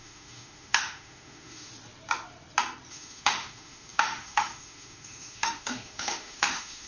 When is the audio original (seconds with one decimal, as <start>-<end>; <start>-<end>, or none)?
1.7-2.9